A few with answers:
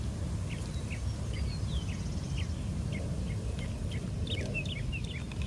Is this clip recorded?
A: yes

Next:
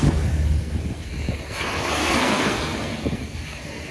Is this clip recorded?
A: no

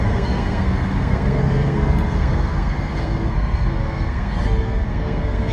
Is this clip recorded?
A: no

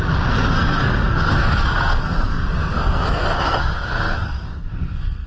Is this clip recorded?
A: no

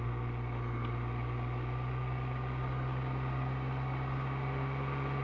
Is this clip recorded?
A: yes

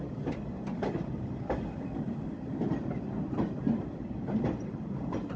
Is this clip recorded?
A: yes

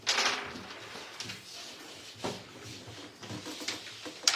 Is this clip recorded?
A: yes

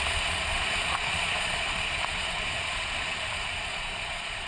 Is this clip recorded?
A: no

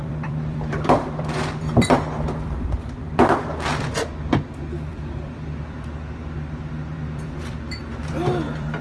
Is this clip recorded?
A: no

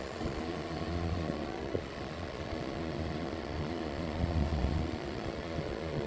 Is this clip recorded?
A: no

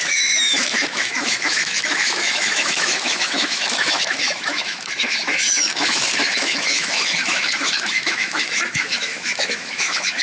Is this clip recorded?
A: no